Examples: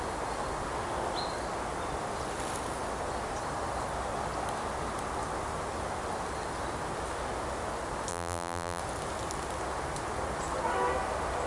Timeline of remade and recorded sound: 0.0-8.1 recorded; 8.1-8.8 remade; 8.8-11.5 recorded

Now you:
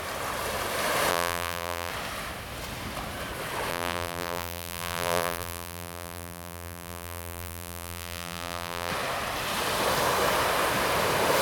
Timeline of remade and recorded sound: 0.0-1.1 recorded; 1.1-1.9 remade; 1.9-3.7 recorded; 3.7-8.9 remade; 8.9-11.4 recorded